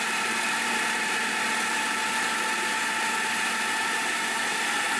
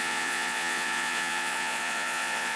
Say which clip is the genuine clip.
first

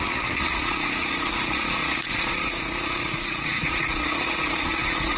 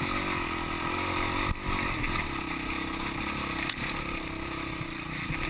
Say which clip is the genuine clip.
second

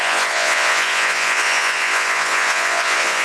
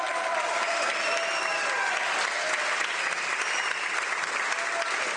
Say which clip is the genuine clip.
second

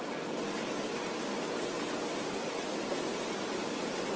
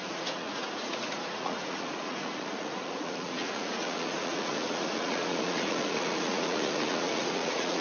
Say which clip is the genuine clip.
first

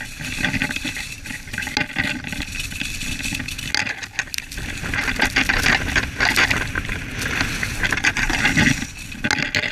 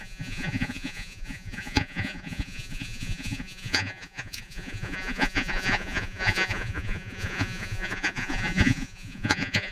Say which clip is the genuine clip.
first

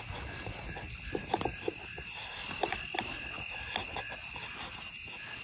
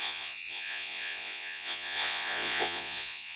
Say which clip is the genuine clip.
first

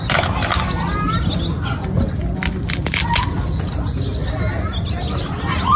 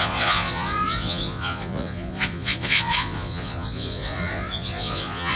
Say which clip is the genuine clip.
first